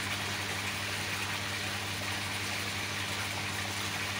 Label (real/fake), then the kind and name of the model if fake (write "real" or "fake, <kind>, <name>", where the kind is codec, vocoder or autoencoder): real